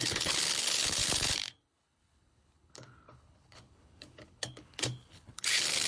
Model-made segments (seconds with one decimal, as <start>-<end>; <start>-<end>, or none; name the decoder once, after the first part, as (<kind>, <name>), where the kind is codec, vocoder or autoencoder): 0.0-5.9 (codec, HILCodec)